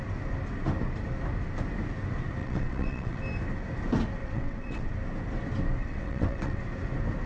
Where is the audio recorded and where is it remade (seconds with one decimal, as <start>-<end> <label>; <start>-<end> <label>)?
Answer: 0.0-2.4 recorded; 2.4-3.2 remade; 3.2-4.2 recorded; 4.2-4.9 remade; 4.9-5.8 recorded; 5.8-6.6 remade; 6.6-7.3 recorded

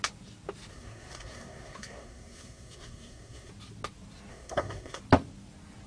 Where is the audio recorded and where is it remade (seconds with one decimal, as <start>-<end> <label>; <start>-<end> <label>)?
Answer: 0.0-0.7 recorded; 0.7-3.5 remade; 3.5-4.3 recorded; 4.3-5.0 remade; 5.0-5.9 recorded